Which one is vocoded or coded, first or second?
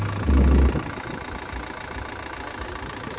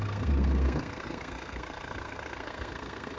second